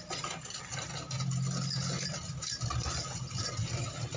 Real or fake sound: real